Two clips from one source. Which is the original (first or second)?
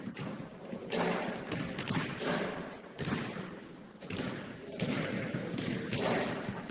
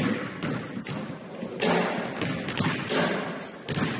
second